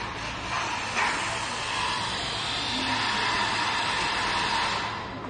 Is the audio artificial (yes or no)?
no